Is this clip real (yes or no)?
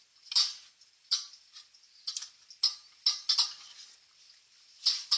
yes